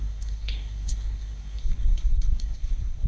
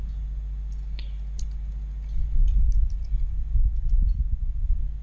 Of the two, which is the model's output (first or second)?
first